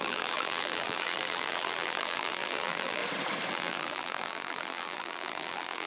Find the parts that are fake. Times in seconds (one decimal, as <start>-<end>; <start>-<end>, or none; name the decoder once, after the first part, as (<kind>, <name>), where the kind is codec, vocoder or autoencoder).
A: 0.0-3.0 (vocoder, BigVGAN v2); 3.5-5.9